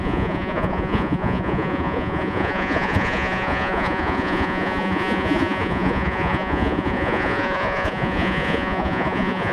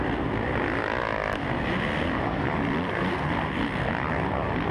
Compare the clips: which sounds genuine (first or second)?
second